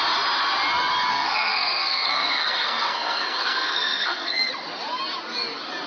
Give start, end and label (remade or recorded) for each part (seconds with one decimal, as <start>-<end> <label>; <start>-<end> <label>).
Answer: 0.0-1.1 recorded; 1.1-4.5 remade; 4.5-5.9 recorded